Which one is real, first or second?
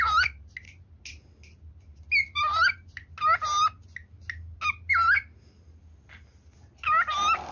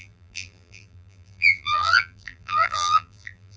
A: first